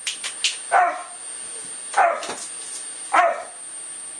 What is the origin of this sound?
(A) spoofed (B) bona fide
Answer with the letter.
B